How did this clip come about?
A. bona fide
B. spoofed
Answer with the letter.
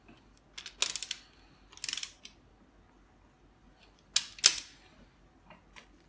A